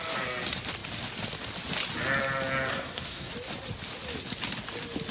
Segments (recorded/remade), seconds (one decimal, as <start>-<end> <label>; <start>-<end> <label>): 0.0-2.7 recorded; 2.7-3.3 remade; 3.3-5.1 recorded